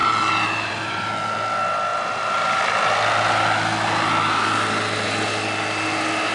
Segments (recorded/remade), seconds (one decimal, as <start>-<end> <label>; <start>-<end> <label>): 0.0-1.1 remade; 1.1-1.9 recorded; 1.9-2.6 remade; 2.6-6.3 recorded